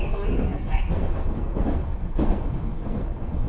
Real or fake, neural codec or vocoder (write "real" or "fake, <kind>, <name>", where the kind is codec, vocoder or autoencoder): fake, codec, SNAC